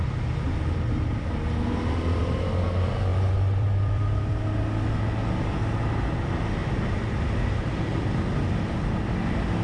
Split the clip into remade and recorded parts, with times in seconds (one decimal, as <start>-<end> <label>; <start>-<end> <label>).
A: 0.0-3.1 recorded; 3.1-4.4 remade; 4.4-6.6 recorded; 6.6-9.1 remade; 9.1-9.6 recorded